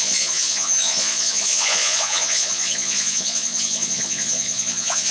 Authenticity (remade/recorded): remade